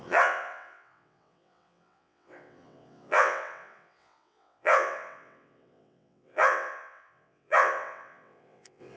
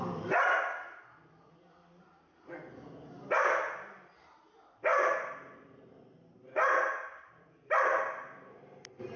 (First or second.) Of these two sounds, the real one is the second